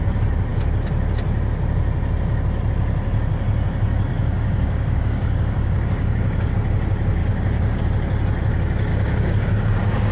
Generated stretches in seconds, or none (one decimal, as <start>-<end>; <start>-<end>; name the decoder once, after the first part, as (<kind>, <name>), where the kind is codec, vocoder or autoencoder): 4.1-6.5 (codec, DAC); 7.2-7.8; 8.9-10.1

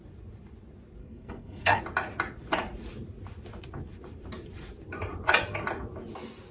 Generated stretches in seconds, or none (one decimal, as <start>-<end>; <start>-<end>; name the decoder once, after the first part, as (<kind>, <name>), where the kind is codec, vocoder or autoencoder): 1.0-1.8 (codec, SNAC)

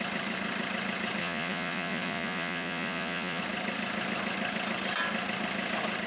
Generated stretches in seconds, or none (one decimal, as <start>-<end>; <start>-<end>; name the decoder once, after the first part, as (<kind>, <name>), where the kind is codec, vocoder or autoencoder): 1.2-3.4 (vocoder, Vocos)